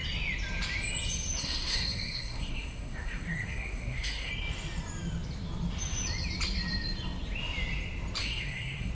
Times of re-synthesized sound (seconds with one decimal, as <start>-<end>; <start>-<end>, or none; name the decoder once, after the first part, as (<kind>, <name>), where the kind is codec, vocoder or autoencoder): 1.4-4.3 (codec, SNAC); 8.2-8.9